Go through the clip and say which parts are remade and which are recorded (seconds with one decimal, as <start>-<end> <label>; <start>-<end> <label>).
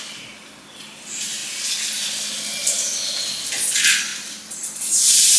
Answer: 0.0-5.4 recorded